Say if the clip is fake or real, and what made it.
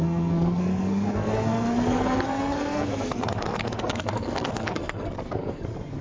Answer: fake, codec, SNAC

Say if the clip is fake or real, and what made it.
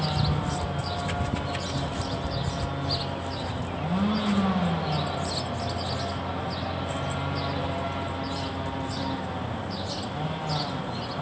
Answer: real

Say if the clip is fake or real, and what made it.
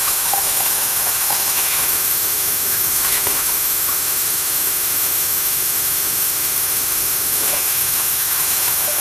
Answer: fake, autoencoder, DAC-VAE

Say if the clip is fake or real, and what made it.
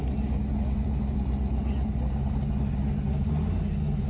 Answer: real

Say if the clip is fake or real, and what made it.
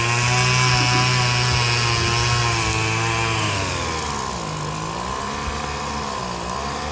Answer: real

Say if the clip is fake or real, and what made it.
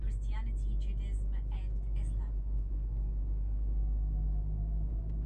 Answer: real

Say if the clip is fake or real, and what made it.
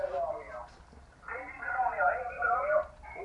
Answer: real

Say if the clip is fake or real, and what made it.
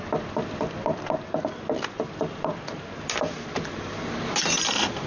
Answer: real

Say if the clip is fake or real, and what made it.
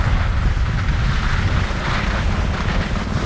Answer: real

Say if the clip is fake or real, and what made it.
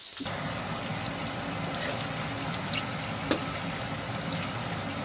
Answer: real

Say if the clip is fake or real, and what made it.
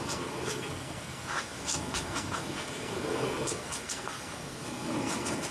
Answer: fake, codec, SNAC